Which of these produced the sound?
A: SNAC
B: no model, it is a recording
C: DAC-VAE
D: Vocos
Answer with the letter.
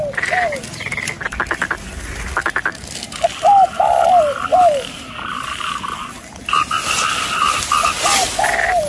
B